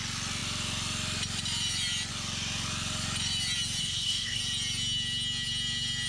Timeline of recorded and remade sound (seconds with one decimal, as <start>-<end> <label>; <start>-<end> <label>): 0.0-3.8 recorded; 3.8-4.4 remade; 4.4-6.1 recorded